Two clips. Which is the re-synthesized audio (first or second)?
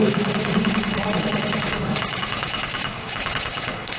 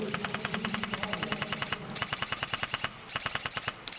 first